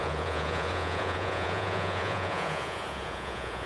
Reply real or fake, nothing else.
fake